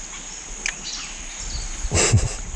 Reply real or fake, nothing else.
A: real